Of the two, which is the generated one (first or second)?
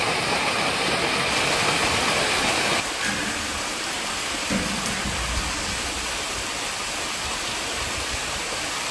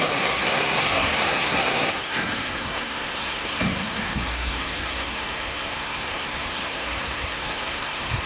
second